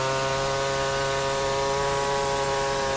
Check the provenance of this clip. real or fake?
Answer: real